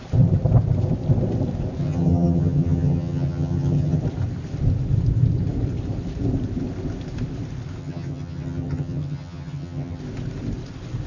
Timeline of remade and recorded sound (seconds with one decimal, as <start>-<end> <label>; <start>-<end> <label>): 0.0-1.8 recorded; 1.8-4.0 remade; 4.0-7.8 recorded; 7.8-10.0 remade; 10.0-11.1 recorded